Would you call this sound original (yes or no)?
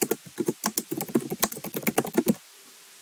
yes